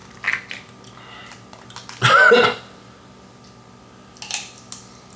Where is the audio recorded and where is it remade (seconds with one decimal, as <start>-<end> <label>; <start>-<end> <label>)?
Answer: 0.0-5.2 recorded